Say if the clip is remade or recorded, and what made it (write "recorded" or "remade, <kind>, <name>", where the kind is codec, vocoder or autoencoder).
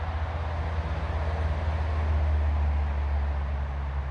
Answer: recorded